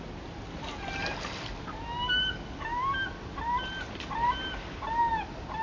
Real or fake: real